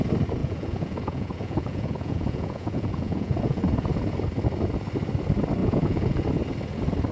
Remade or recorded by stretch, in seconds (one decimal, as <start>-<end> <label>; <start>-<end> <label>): 0.0-0.4 recorded; 0.4-3.6 remade; 3.6-5.6 recorded; 5.6-6.2 remade; 6.2-7.1 recorded